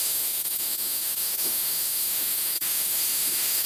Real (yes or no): no